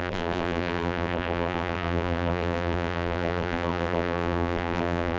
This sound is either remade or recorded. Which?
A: remade